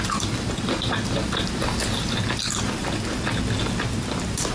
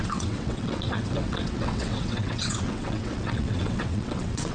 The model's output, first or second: second